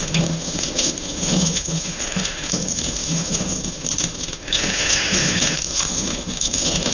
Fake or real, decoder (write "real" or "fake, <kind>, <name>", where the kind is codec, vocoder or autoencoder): fake, autoencoder, DAC-VAE